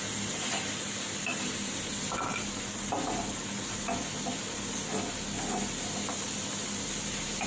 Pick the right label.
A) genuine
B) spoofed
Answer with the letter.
A